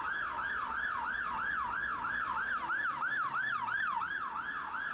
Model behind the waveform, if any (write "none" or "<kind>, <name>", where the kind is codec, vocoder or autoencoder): none